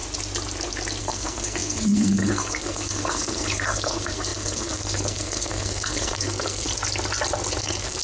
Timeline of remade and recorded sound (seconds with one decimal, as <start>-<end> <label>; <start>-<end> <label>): 0.0-1.0 recorded; 1.0-6.7 remade; 6.7-7.6 recorded; 7.6-8.0 remade